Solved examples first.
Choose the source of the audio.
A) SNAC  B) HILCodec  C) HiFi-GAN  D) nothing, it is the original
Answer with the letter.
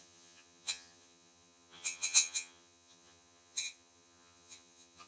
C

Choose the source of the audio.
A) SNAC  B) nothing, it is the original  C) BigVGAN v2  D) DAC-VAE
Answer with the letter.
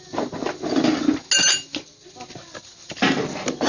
B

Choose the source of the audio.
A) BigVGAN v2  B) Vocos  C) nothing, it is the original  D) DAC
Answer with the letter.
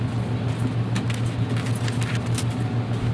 C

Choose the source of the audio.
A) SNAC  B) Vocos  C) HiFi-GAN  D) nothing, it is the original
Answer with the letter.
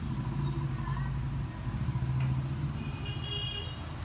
D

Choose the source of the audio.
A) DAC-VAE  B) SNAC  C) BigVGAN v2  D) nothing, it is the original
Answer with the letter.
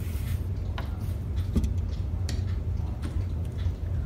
D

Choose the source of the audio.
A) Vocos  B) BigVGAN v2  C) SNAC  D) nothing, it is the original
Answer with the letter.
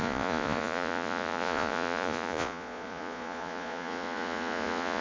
A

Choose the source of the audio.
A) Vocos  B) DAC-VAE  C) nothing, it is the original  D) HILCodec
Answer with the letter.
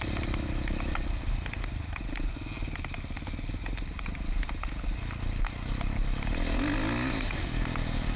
C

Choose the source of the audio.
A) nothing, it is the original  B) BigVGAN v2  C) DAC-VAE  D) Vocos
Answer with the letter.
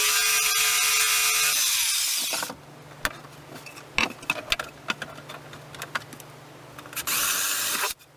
A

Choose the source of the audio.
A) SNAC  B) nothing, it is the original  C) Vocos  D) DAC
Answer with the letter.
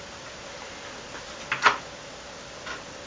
B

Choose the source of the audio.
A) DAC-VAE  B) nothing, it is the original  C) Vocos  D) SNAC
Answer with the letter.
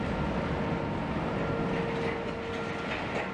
B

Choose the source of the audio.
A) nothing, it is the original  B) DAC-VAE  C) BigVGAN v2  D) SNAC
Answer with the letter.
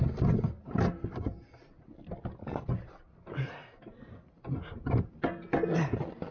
A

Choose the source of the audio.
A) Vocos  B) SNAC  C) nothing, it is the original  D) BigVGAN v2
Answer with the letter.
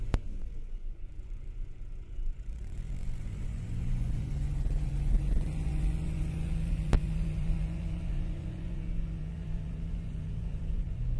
A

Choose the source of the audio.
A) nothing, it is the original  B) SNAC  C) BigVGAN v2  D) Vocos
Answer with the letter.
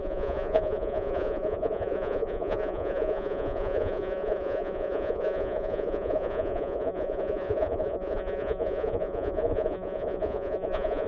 D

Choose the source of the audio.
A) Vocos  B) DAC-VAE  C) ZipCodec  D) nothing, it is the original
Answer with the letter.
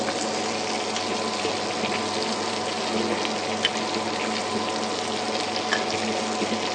D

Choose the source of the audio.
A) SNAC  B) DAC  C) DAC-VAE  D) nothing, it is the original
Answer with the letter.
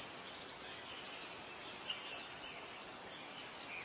D